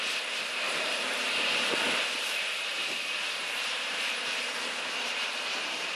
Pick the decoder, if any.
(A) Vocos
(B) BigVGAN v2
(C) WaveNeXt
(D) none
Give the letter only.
B